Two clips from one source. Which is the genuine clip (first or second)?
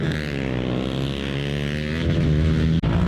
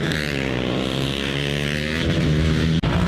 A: first